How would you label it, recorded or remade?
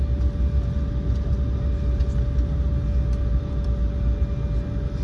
recorded